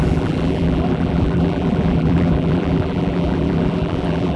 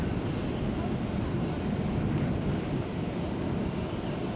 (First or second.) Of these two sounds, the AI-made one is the first